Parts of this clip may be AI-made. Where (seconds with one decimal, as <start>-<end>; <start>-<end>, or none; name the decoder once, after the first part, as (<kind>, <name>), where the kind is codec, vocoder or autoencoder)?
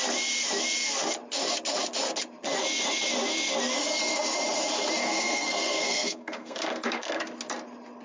5.0-7.2 (codec, SNAC)